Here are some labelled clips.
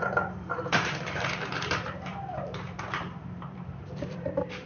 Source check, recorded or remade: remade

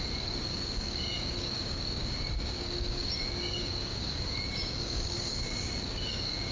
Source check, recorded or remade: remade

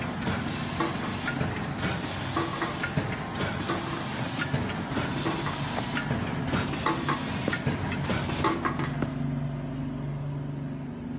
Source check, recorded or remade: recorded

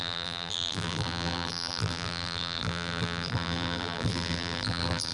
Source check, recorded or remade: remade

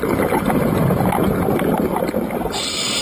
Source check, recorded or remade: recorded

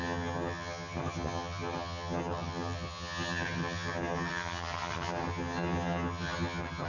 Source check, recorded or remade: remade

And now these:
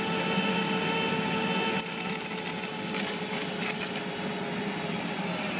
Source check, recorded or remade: recorded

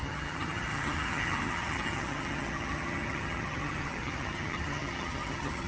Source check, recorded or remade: remade